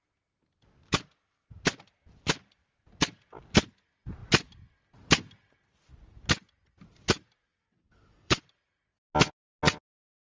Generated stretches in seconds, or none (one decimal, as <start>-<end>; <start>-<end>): 7.5-8.4

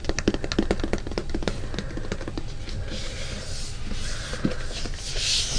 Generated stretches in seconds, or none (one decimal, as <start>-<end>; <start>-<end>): none

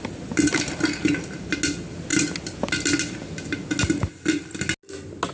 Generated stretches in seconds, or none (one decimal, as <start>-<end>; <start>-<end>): none

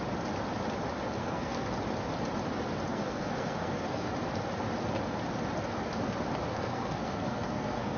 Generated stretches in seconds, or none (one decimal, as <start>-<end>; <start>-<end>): 1.2-1.7; 2.9-4.1; 6.5-8.0

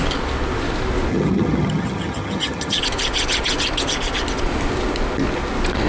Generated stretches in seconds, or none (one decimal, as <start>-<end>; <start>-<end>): 1.1-2.8

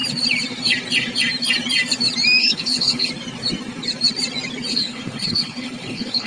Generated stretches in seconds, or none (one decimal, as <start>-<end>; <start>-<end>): 2.4-3.1; 4.7-6.3